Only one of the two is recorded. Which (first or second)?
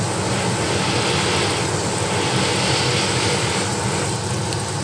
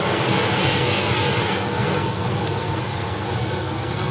first